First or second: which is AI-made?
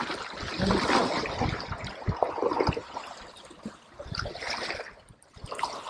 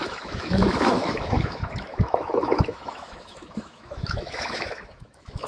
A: second